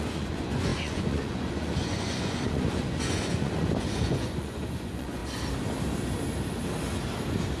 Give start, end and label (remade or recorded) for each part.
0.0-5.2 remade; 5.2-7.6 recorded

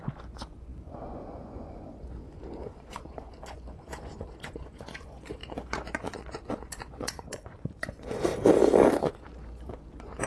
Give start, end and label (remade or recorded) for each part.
0.0-8.3 remade; 8.3-9.0 recorded; 9.0-10.3 remade

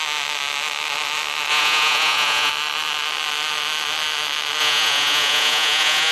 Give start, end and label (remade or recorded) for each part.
0.0-1.5 recorded; 1.5-2.5 remade; 2.5-4.6 recorded; 4.6-6.1 remade

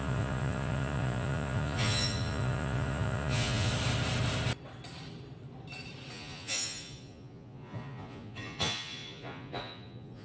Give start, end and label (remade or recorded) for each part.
0.0-3.7 remade; 3.7-6.1 recorded; 6.1-10.2 remade

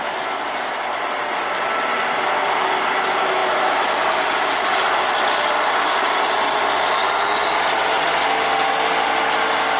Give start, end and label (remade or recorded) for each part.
0.0-9.8 recorded

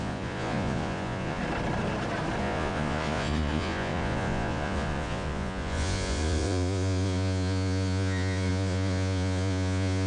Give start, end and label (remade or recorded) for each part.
0.0-1.4 remade; 1.4-2.4 recorded; 2.4-10.1 remade

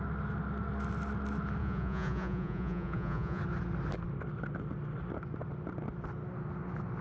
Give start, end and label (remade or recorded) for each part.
0.0-1.6 recorded; 1.6-3.4 remade; 3.4-7.0 recorded

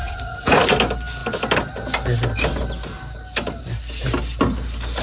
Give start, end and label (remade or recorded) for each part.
0.0-0.6 remade; 0.6-5.0 recorded